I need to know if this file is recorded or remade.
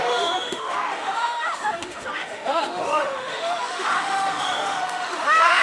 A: remade